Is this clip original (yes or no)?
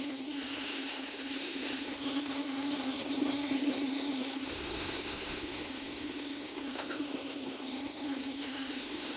no